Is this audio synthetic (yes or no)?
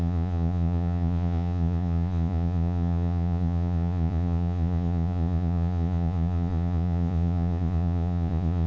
yes